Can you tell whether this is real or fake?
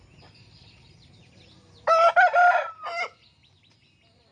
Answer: real